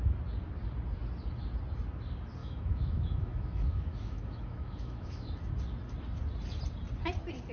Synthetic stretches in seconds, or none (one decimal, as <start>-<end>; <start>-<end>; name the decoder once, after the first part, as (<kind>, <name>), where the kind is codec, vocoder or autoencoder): 2.4-5.4 (autoencoder, DAC-VAE)

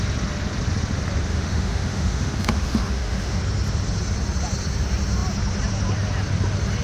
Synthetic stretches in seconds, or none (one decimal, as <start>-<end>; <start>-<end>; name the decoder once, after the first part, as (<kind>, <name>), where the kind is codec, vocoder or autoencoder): 1.3-3.4 (autoencoder, DAC-VAE)

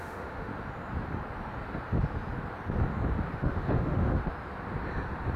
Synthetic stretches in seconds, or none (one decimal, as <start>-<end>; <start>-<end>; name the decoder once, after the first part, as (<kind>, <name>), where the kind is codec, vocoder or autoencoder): 0.0-0.5 (autoencoder, DAC-VAE); 3.3-4.2

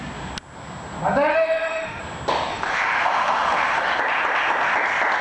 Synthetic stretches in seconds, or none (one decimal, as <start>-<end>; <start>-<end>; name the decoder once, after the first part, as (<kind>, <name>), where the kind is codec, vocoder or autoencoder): 1.3-2.0 (autoencoder, DAC-VAE); 2.5-3.9

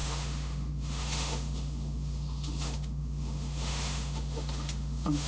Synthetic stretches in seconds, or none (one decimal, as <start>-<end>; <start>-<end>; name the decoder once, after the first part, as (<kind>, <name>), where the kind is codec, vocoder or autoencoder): 0.0-5.3 (autoencoder, DAC-VAE)

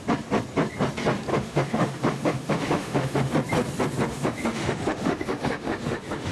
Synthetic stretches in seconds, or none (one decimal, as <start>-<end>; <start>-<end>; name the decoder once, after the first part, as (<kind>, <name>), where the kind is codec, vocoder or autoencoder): 1.3-3.3 (autoencoder, DAC-VAE); 4.1-6.3

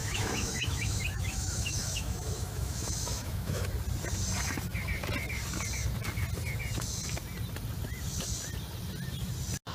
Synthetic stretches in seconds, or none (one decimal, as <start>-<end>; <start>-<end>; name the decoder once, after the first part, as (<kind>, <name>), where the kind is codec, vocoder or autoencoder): 0.0-3.6 (autoencoder, DAC-VAE)